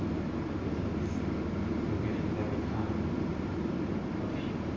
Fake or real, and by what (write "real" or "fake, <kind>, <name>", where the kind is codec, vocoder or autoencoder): real